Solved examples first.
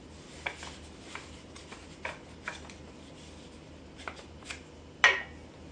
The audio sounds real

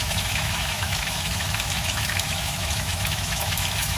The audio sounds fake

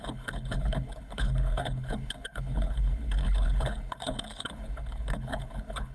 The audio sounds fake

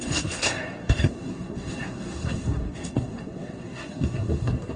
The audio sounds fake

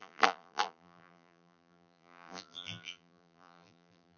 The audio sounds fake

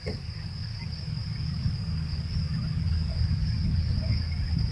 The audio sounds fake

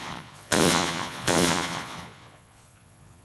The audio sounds fake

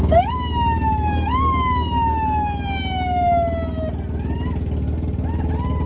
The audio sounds real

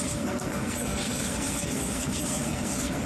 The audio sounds fake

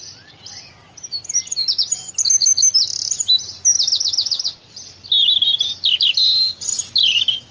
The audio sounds real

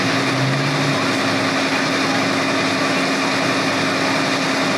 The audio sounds real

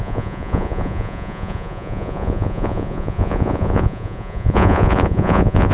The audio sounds fake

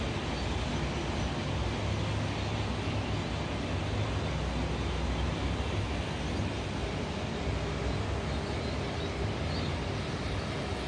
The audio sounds real